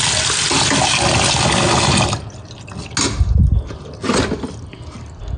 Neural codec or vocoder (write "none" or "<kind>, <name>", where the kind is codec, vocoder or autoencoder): none